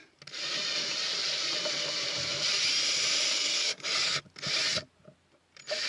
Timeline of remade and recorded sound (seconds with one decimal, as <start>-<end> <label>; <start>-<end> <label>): 0.0-3.3 recorded; 3.3-4.2 remade; 4.2-5.9 recorded